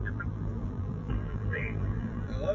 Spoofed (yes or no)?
yes